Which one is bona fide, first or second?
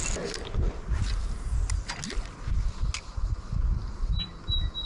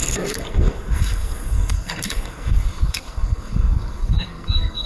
first